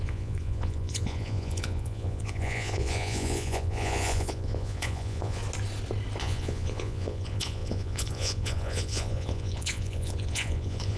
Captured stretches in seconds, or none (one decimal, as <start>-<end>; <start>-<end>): 5.4-6.2